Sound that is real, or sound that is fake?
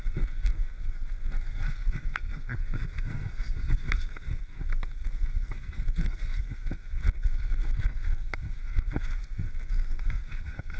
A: fake